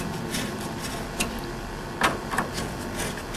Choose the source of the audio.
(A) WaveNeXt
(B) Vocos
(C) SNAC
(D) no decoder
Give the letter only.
D